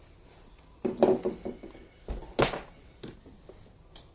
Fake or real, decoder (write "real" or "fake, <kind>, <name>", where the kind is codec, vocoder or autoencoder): real